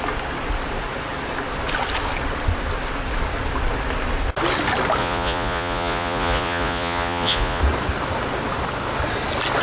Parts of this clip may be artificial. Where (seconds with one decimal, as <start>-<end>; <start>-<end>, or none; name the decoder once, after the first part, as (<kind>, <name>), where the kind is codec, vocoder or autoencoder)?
5.0-7.6 (vocoder, Vocos)